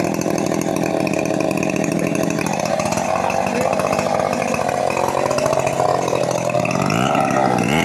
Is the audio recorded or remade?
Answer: recorded